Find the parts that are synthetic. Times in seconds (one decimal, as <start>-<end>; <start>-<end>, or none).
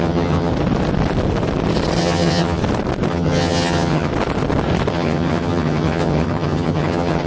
0.0-0.5; 2.0-2.6; 3.1-4.1; 4.9-7.3